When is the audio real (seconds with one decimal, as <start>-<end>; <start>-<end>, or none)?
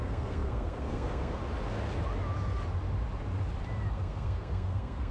1.4-3.9